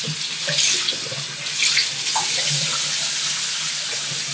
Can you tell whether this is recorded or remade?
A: recorded